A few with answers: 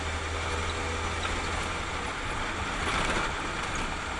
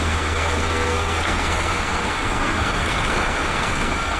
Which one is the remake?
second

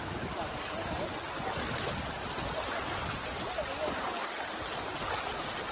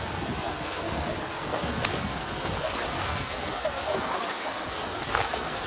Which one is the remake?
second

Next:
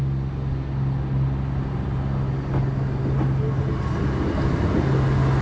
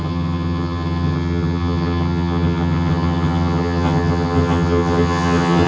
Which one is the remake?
second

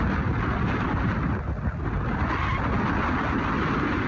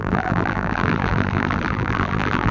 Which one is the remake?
second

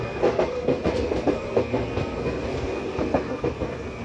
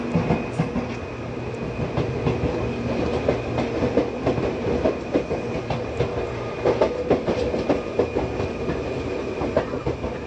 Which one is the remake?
first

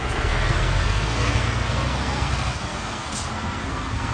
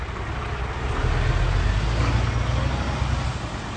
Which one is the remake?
first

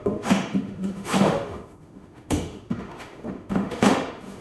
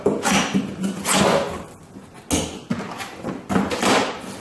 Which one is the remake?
first